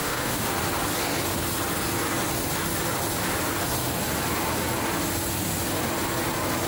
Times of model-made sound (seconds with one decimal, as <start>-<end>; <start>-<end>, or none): 0.0-0.5